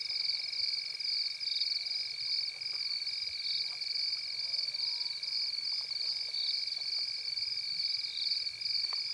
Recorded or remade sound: recorded